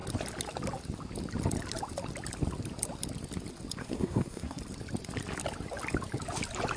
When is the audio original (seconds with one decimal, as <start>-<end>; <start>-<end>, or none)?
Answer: 0.0-3.8; 4.6-6.8

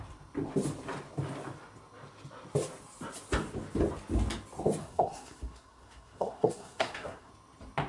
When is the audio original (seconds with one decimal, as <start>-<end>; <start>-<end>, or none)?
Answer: 0.0-4.8; 7.3-7.9